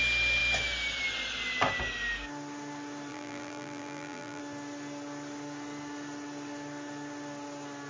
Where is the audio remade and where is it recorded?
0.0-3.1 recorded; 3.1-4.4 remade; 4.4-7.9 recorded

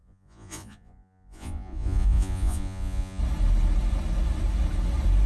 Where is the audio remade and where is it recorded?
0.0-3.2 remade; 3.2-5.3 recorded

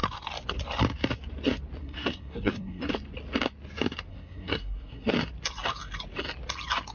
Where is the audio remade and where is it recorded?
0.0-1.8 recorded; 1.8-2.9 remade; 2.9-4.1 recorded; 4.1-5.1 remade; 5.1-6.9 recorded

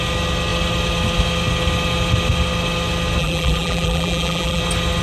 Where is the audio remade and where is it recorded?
0.0-3.2 recorded; 3.2-4.6 remade; 4.6-5.0 recorded

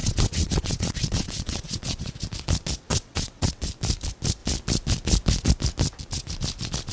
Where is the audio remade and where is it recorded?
0.0-2.1 remade; 2.1-2.9 recorded; 2.9-3.6 remade; 3.6-6.9 recorded

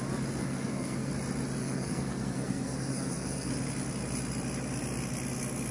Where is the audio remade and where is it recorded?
0.0-0.4 recorded; 0.4-1.1 remade; 1.1-1.6 recorded; 1.6-3.5 remade; 3.5-5.7 recorded

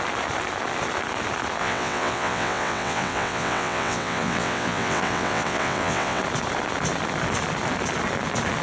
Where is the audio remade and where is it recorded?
0.0-1.6 recorded; 1.6-6.2 remade; 6.2-8.6 recorded